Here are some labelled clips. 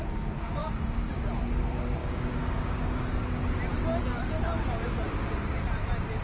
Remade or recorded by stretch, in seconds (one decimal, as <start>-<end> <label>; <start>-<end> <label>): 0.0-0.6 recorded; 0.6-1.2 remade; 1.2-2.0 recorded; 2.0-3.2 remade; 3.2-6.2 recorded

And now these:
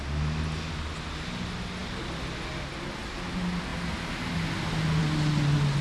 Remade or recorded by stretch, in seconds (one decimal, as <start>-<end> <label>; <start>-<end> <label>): 0.0-5.8 recorded

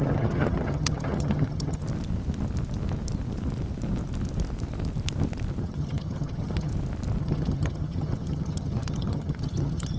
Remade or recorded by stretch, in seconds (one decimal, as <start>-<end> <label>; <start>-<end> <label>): 0.0-1.8 remade; 1.8-5.6 recorded; 5.6-6.7 remade; 6.7-7.2 recorded; 7.2-10.0 remade

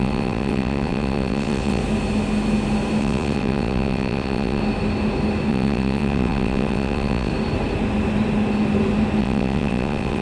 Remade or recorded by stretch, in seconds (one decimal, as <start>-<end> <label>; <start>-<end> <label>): 0.0-1.8 remade; 1.8-3.0 recorded; 3.0-4.6 remade; 4.6-5.5 recorded; 5.5-7.3 remade; 7.3-9.2 recorded; 9.2-10.2 remade

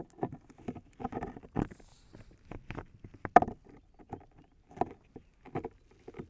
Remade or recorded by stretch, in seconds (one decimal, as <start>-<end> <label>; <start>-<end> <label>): 0.0-6.3 recorded

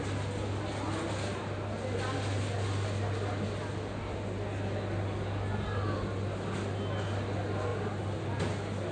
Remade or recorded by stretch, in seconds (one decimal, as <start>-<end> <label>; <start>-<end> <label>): 0.0-8.9 recorded

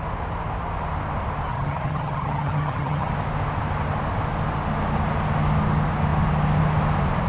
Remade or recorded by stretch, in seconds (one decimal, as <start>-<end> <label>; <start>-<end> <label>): 0.0-1.5 recorded; 1.5-3.1 remade; 3.1-7.3 recorded